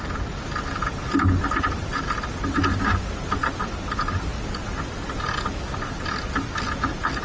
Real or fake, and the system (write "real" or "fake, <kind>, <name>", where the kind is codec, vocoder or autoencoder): real